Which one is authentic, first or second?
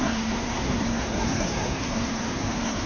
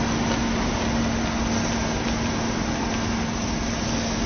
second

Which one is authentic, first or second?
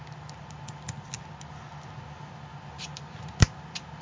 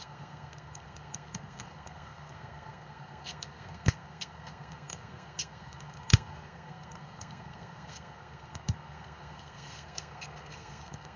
first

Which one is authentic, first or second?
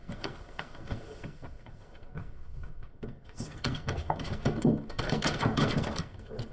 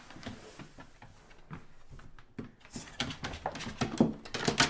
second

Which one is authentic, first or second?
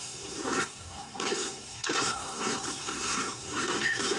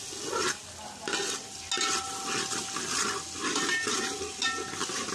second